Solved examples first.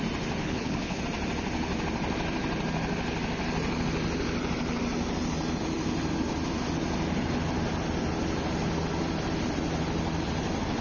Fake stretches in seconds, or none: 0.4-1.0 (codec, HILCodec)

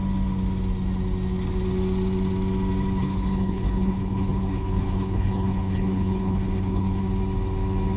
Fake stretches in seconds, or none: 3.0-7.0 (codec, HILCodec)